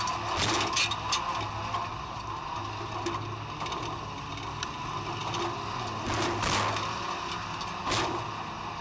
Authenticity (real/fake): real